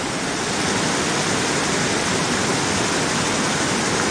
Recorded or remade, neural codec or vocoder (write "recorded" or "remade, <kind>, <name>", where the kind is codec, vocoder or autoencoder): recorded